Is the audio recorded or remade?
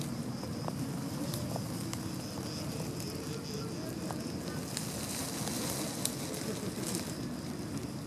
recorded